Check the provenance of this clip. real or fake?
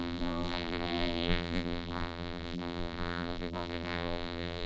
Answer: fake